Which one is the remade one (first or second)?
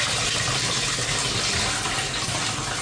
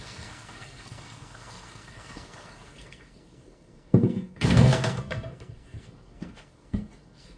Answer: second